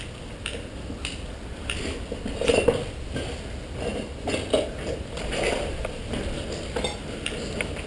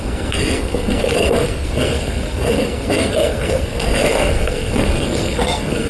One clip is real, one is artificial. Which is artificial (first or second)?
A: second